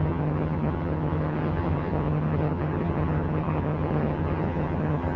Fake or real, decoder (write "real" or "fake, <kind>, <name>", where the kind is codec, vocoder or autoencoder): fake, vocoder, HiFi-GAN